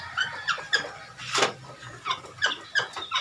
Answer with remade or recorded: remade